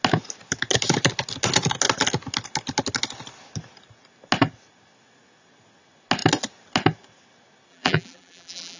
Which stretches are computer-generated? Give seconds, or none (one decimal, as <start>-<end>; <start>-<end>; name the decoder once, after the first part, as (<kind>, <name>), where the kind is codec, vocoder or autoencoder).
7.7-8.8 (vocoder, BigVGAN v2)

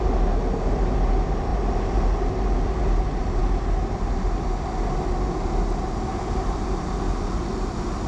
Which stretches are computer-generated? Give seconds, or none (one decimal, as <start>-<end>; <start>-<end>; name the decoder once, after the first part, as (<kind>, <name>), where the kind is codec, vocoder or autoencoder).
none

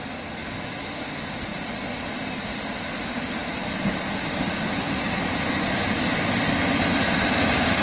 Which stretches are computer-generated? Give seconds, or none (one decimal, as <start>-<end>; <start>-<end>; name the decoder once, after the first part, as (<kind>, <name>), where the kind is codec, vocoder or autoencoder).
none

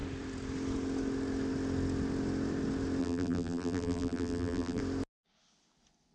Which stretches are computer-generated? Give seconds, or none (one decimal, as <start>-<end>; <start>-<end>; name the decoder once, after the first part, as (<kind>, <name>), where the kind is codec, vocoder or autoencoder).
3.0-4.8 (vocoder, BigVGAN v2)

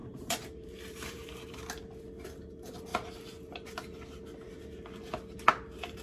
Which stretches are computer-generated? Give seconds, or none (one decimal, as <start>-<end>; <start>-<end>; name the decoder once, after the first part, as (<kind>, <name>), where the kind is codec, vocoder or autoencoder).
0.0-1.6 (vocoder, BigVGAN v2)

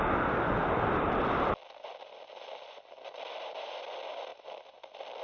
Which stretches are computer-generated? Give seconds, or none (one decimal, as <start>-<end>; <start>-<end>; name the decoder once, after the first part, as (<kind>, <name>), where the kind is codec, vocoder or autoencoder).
0.6-2.3 (vocoder, BigVGAN v2); 4.3-5.2

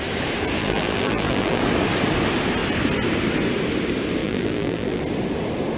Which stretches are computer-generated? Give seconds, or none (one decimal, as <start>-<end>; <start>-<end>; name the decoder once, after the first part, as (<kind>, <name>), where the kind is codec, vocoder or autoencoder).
0.6-1.6 (vocoder, BigVGAN v2); 4.2-5.0

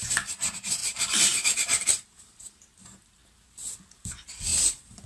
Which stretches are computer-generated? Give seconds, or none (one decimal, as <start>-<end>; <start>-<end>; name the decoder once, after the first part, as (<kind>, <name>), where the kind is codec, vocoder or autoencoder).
0.0-3.2 (vocoder, BigVGAN v2); 4.0-5.1